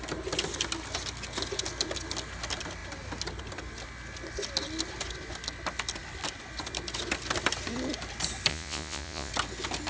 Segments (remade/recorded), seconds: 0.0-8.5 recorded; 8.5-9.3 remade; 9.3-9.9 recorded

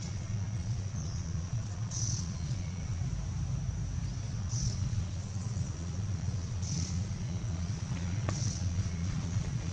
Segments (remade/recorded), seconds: 0.0-3.0 remade; 3.0-4.3 recorded; 4.3-9.7 remade

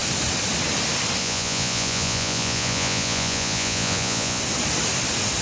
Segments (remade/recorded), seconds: 0.0-1.2 recorded; 1.2-4.4 remade; 4.4-5.4 recorded

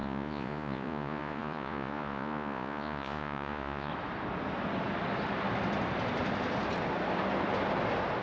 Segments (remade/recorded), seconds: 0.0-3.9 remade; 3.9-8.2 recorded